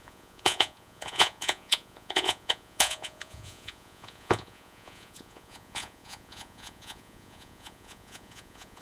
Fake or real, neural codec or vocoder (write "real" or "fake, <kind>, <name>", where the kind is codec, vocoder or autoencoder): fake, vocoder, Vocos